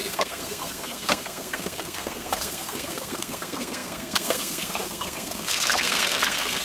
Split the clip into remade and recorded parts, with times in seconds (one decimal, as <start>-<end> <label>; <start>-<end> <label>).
0.0-6.6 remade